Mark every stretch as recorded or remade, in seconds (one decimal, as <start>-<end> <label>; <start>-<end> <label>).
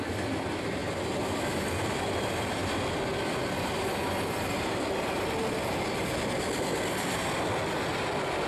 0.0-8.5 recorded